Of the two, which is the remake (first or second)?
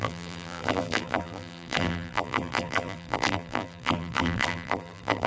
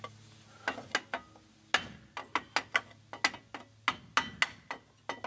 first